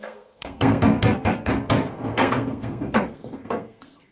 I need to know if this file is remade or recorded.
remade